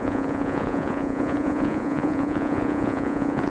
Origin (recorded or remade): remade